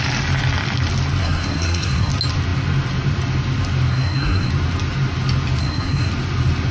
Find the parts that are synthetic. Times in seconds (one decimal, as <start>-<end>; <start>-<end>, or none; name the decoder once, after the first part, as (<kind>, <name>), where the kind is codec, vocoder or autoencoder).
1.2-2.1 (codec, SNAC); 3.9-4.5; 5.6-6.1